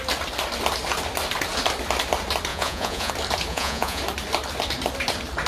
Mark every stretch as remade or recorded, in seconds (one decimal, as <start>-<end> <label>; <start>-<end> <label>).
0.0-2.5 recorded; 2.5-3.1 remade; 3.1-3.5 recorded; 3.5-4.0 remade; 4.0-5.5 recorded